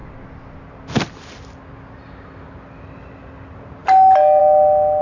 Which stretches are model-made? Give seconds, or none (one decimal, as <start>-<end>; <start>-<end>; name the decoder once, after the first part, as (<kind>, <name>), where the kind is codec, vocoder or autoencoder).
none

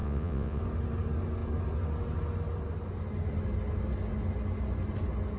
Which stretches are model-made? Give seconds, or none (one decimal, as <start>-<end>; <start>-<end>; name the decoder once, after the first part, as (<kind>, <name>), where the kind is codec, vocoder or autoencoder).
0.0-0.6 (vocoder, WaveNeXt)

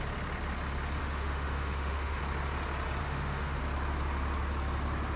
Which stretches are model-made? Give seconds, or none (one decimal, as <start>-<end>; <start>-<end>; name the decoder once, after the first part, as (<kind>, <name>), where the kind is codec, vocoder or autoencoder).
1.0-2.2 (autoencoder, DAC-VAE); 3.0-3.6

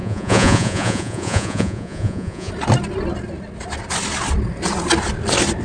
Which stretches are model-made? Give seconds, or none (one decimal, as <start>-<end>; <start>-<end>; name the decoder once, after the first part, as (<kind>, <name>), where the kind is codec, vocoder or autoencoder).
0.0-2.5 (vocoder, Vocos)

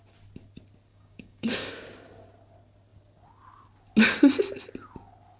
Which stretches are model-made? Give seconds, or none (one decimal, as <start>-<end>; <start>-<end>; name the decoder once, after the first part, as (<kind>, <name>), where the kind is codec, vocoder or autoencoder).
0.9-1.7 (codec, DAC)

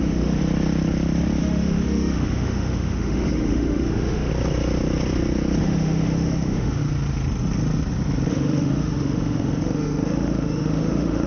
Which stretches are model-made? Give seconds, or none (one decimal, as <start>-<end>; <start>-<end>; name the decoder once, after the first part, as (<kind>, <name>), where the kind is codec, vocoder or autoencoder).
0.0-0.4 (autoencoder, DAC-VAE); 1.4-4.3; 5.6-6.8; 8.3-11.3

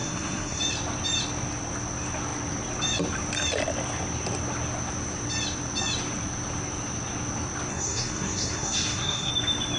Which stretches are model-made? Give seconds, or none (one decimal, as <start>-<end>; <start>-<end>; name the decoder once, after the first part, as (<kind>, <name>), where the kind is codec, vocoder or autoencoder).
0.0-0.6 (codec, SNAC); 7.7-9.3